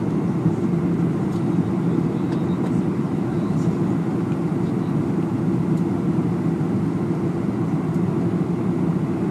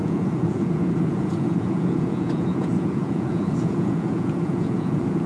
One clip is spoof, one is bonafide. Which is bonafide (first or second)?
first